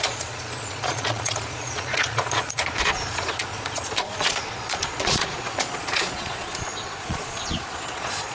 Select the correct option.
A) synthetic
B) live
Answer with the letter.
A